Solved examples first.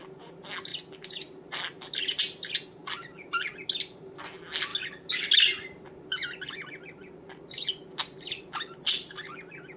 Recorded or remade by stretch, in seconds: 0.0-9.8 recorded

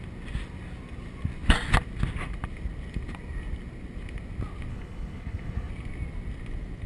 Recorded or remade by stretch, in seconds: 0.0-4.7 recorded; 4.7-5.7 remade; 5.7-6.9 recorded

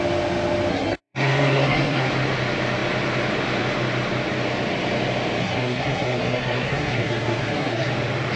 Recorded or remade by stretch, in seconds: 0.0-0.7 recorded; 0.7-2.1 remade; 2.1-5.4 recorded; 5.4-7.9 remade; 7.9-8.4 recorded

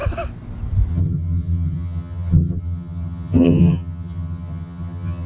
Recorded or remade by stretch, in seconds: 0.0-0.9 recorded; 0.9-5.3 remade